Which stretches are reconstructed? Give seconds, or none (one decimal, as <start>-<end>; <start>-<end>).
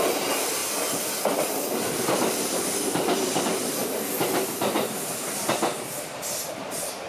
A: none